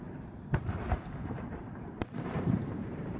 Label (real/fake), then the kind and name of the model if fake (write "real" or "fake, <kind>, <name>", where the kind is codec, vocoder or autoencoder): fake, vocoder, BigVGAN v2